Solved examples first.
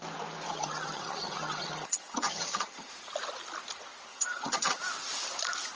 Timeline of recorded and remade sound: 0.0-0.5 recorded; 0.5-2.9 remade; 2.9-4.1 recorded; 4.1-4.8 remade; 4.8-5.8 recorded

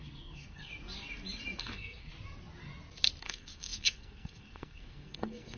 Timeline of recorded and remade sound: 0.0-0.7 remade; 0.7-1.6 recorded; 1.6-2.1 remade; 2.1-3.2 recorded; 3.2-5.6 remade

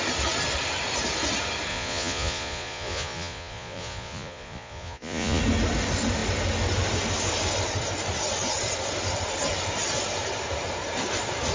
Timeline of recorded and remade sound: 0.0-1.7 recorded; 1.7-5.4 remade; 5.4-11.5 recorded

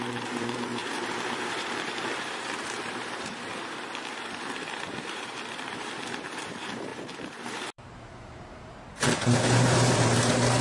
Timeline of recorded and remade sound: 0.0-3.5 remade; 3.5-4.1 recorded; 4.1-10.6 remade

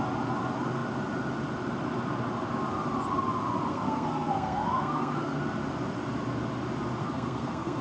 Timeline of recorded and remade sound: 0.0-3.7 recorded; 3.7-5.4 remade; 5.4-7.0 recorded; 7.0-7.8 remade

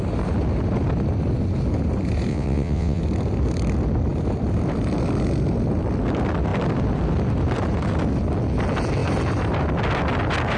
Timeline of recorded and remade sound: 0.0-2.3 recorded; 2.3-3.0 remade; 3.0-10.6 recorded